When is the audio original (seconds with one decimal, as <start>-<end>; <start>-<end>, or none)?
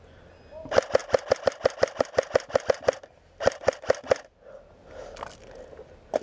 0.0-6.2